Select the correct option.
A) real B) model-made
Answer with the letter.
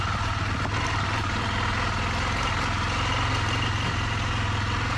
A